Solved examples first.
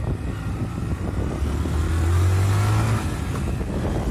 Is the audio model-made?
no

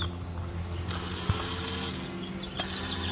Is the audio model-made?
no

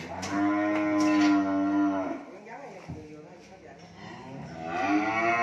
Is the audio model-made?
no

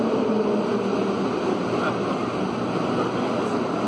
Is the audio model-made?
no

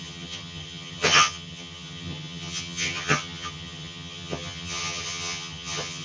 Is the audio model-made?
yes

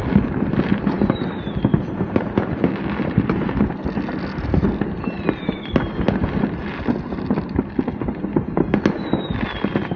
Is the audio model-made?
no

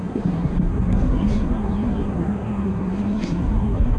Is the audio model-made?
yes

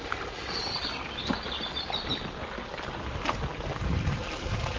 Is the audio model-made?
no